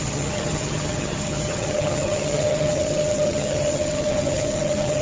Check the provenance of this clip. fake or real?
fake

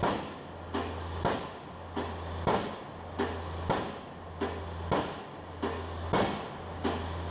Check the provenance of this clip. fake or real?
real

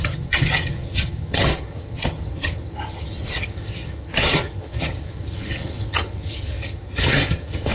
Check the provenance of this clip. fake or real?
fake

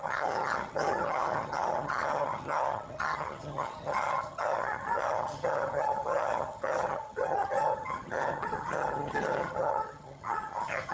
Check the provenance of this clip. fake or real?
fake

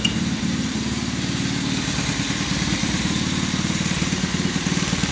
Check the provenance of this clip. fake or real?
real